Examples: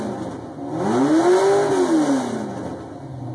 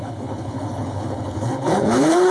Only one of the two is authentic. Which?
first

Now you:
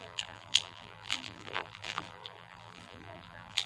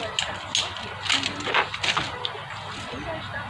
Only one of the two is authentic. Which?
second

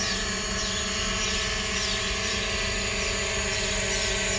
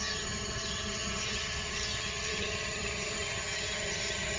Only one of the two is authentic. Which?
first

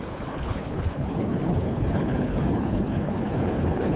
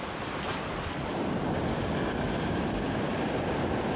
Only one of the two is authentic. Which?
second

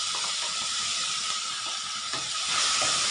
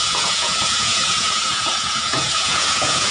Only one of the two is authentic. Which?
first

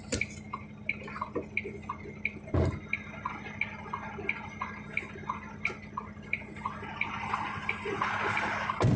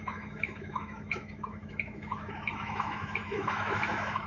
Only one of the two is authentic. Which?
first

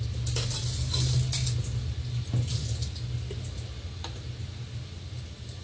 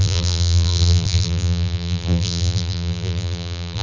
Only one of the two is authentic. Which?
first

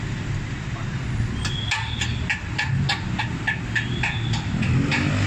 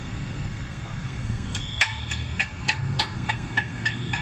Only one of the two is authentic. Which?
first